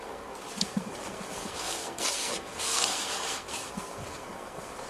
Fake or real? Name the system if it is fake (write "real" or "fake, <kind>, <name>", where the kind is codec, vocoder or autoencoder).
fake, codec, SNAC